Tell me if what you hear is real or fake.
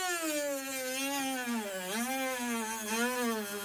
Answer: real